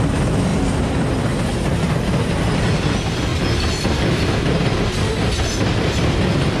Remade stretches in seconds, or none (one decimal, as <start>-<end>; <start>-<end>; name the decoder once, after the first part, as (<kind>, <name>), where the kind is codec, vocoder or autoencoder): 0.5-1.3 (vocoder, BigVGAN v2)